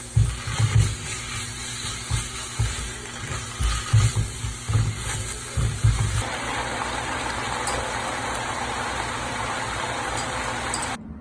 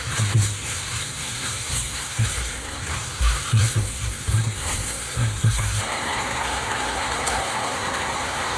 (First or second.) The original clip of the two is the first